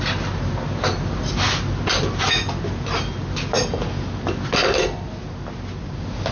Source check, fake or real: real